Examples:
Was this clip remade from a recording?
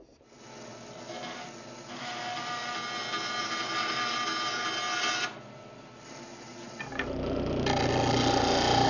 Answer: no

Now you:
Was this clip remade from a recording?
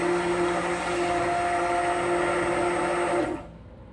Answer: no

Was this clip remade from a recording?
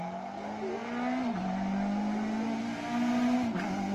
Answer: no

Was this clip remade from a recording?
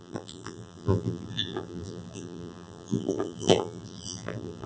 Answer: yes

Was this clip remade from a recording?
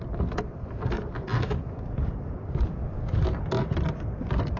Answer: yes